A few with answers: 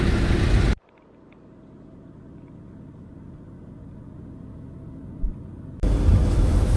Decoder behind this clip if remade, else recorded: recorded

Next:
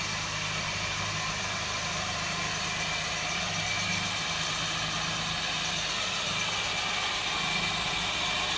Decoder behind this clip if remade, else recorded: recorded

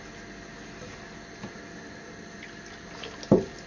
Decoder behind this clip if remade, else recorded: recorded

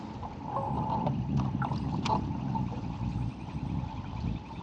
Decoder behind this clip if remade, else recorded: recorded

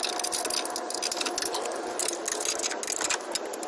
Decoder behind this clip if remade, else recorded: recorded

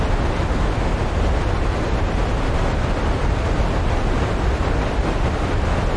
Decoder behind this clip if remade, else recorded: recorded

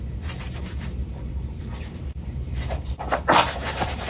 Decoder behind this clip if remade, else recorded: remade, vocoder, BigVGAN v2